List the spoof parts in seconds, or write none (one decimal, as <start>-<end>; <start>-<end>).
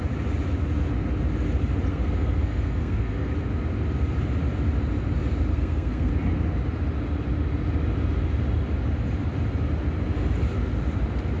1.9-3.3; 5.5-6.1